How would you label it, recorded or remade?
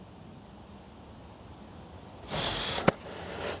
recorded